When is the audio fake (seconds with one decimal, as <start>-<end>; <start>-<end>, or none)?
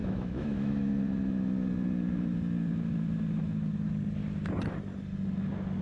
0.0-0.9